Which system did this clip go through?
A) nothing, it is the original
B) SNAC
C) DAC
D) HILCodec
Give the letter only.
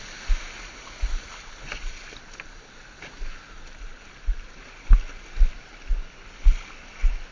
A